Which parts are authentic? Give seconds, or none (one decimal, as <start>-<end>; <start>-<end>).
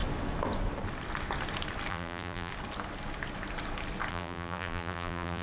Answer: 0.0-1.9; 2.5-4.1